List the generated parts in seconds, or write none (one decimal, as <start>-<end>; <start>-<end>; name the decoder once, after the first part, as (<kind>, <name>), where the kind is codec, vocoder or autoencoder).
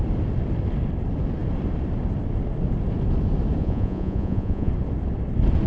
3.6-4.7 (vocoder, Vocos)